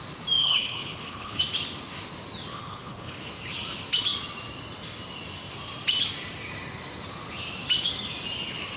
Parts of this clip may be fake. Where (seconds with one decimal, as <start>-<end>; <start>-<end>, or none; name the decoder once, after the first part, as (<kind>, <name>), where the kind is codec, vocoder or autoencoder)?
0.4-1.4 (codec, HILCodec); 2.5-3.3